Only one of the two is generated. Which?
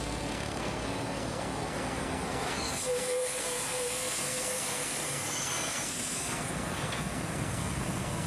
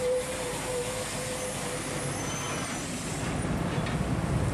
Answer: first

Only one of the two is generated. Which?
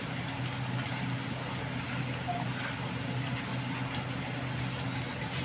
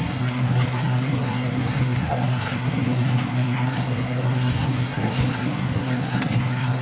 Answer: second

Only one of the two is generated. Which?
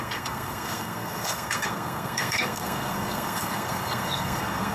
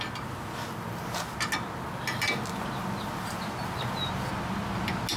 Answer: first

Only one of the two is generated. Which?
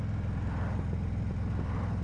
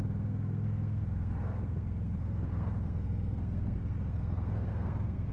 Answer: second